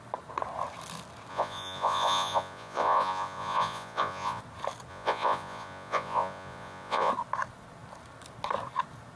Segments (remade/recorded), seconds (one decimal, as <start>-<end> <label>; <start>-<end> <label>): 0.0-1.3 recorded; 1.3-4.4 remade; 4.4-4.9 recorded; 4.9-7.1 remade; 7.1-9.2 recorded